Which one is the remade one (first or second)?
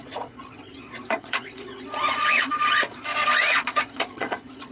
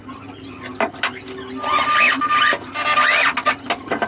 first